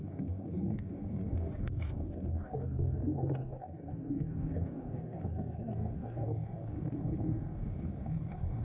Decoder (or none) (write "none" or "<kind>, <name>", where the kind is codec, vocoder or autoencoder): codec, DAC